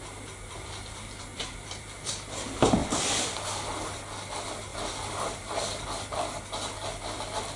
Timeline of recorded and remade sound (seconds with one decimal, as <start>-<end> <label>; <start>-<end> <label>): 0.0-1.3 recorded; 1.3-2.0 remade; 2.0-2.8 recorded; 2.8-3.3 remade; 3.3-4.7 recorded; 4.7-5.9 remade; 5.9-7.6 recorded